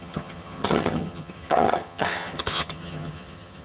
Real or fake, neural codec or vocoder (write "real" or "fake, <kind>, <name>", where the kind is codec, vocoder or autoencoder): fake, vocoder, HiFi-GAN